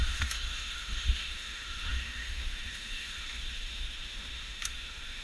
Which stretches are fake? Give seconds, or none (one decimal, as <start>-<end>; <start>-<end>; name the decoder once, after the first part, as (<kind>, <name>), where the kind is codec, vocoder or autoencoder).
0.0-5.2 (autoencoder, DAC-VAE)